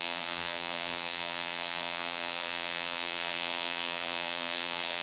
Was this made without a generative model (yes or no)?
no